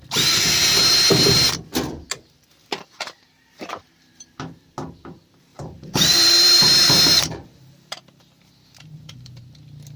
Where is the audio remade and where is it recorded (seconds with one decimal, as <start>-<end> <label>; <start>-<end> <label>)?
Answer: 0.0-2.6 recorded; 2.6-4.3 remade; 4.3-5.5 recorded; 5.5-9.4 remade; 9.4-10.0 recorded